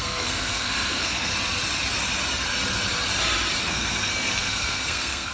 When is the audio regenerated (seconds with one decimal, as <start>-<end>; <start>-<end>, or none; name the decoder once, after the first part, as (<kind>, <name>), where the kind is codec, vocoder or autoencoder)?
0.0-1.3 (codec, SNAC); 3.6-5.3